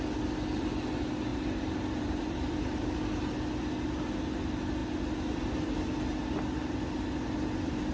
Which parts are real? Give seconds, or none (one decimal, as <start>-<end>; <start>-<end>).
0.0-1.3; 2.5-7.9